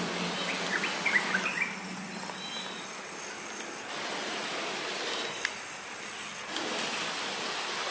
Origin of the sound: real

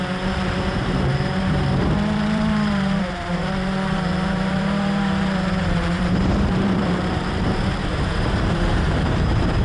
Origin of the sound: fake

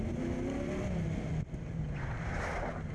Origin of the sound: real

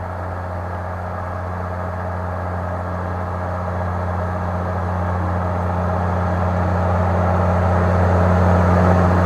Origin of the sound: real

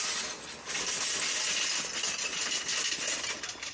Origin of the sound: real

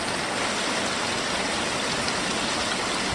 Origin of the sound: real